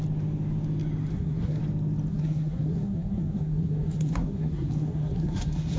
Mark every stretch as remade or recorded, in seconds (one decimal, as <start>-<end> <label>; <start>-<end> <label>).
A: 0.0-1.1 recorded; 1.1-1.6 remade; 1.6-2.1 recorded; 2.1-5.8 remade